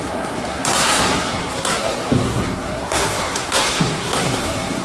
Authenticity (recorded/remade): remade